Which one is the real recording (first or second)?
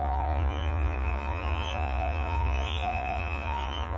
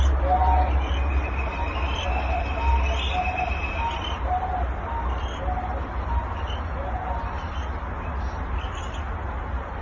second